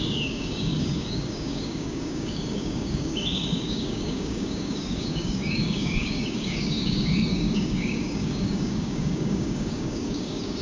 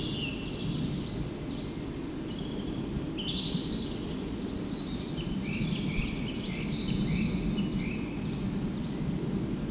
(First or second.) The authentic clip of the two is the second